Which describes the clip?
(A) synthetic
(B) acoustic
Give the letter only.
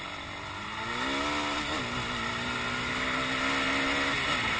B